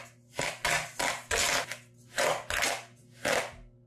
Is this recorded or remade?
recorded